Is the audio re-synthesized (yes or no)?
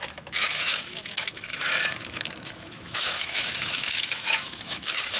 yes